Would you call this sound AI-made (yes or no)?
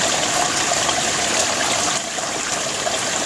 no